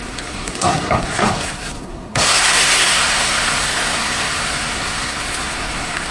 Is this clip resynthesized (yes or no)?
yes